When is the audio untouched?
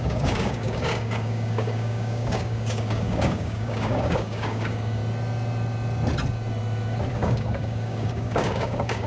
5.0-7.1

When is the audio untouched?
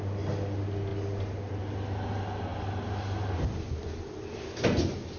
0.0-5.2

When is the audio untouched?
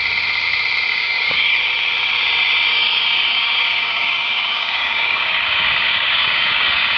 0.0-0.9; 1.5-2.7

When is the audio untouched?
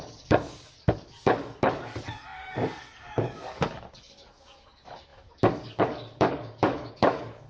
none